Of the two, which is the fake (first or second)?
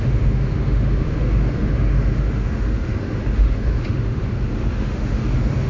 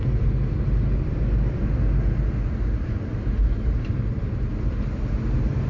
first